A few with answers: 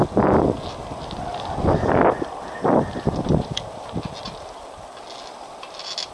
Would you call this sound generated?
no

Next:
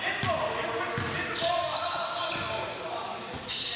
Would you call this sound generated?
no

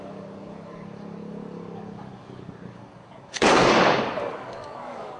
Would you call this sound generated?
yes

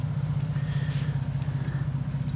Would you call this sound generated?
no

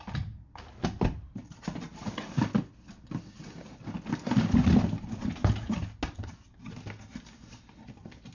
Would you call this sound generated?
no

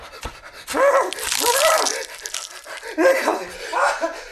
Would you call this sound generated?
no